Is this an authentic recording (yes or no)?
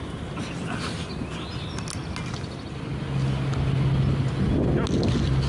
yes